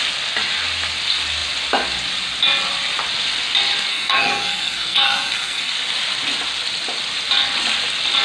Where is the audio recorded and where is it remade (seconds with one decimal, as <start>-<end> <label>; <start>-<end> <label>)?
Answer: 0.0-3.9 recorded; 3.9-5.7 remade; 5.7-8.2 recorded